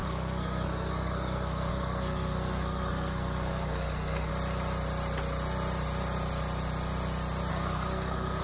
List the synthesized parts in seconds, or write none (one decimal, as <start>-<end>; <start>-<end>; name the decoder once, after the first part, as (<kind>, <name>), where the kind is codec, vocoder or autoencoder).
0.0-4.3 (codec, SNAC); 7.5-8.4